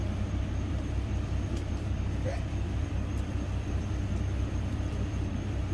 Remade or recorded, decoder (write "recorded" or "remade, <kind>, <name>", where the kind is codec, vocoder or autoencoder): remade, vocoder, BigVGAN v2